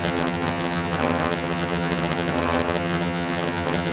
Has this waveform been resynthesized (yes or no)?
yes